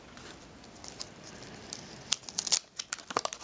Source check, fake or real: real